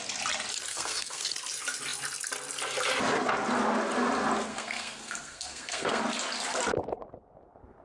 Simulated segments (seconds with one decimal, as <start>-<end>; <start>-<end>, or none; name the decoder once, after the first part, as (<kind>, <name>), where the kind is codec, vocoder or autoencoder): 0.7-1.3 (codec, SNAC); 4.5-6.0